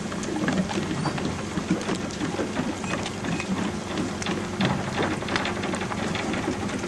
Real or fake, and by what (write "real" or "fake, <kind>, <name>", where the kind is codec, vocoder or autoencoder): real